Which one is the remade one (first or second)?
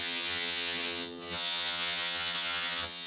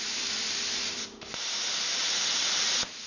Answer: first